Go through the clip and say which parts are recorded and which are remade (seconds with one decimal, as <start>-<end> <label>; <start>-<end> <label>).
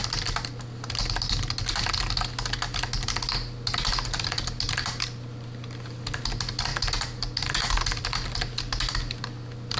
0.0-9.8 recorded